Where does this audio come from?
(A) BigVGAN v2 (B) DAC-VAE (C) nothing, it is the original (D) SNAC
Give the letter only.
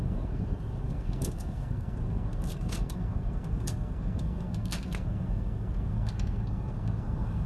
D